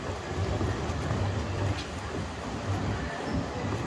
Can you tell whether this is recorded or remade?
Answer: recorded